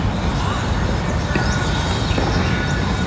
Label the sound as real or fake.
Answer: real